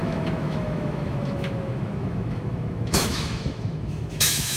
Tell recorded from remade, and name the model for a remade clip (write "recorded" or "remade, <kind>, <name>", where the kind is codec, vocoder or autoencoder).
remade, autoencoder, DAC-VAE